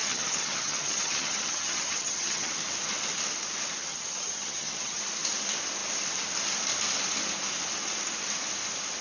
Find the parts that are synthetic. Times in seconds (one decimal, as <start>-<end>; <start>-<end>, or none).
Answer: 0.0-2.5; 3.9-5.0